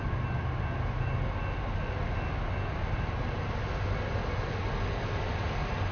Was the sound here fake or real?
real